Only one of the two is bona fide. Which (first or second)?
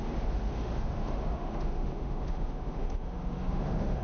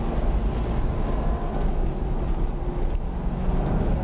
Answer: second